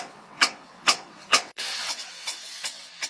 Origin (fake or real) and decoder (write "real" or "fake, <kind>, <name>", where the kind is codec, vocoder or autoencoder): fake, vocoder, WaveNeXt